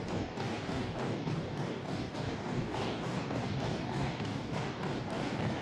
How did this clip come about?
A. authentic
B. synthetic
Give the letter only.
B